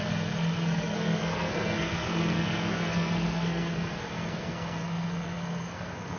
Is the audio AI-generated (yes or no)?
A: yes